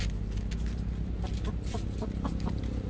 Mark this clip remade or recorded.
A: recorded